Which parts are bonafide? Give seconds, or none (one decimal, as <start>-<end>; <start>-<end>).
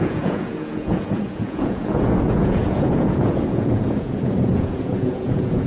none